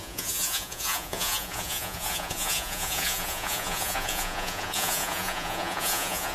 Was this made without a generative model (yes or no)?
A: no